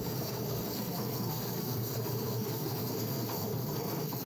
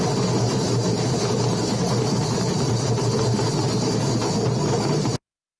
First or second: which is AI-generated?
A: first